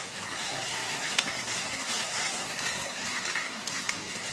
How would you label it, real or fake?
fake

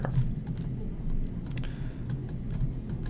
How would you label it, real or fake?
real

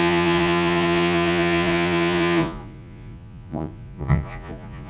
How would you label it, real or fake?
fake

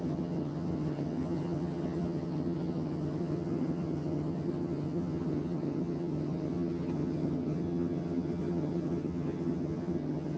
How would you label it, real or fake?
fake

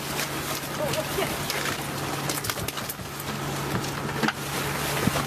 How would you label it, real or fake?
real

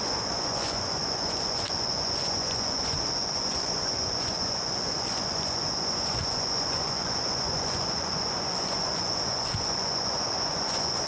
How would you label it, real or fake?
fake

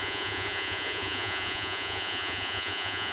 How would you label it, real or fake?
fake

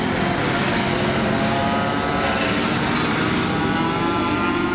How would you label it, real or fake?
real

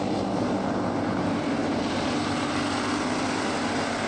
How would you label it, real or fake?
fake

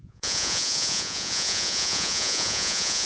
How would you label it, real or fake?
fake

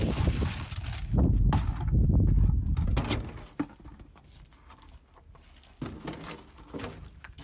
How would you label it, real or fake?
real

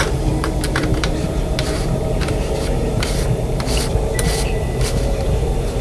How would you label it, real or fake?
fake